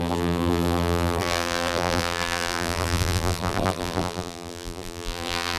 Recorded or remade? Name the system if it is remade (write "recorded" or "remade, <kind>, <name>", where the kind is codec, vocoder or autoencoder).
remade, vocoder, BigVGAN v2